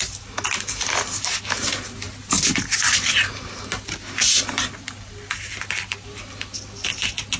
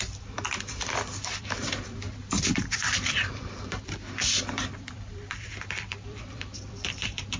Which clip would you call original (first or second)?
first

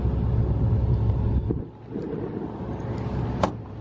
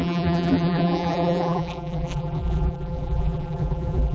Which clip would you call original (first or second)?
first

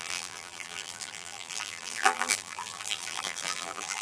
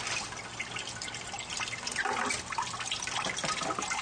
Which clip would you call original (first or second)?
second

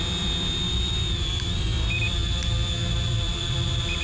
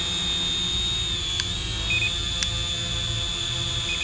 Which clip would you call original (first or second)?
second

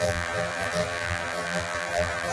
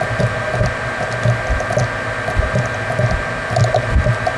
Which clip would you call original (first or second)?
second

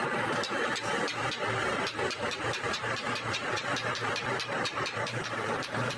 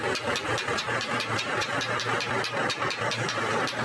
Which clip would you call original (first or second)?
second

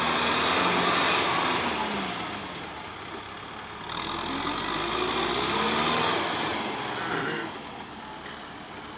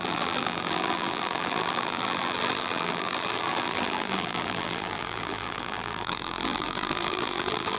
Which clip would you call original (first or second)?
first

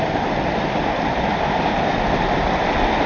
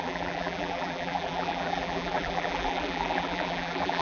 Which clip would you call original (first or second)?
first